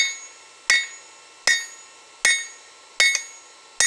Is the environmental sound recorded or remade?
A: recorded